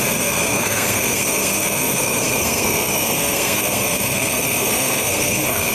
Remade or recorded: remade